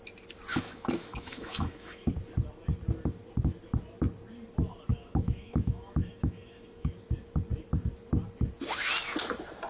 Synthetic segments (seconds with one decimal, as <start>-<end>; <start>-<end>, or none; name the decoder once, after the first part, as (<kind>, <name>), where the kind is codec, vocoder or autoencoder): 0.5-2.1 (autoencoder, DAC-VAE); 4.9-6.9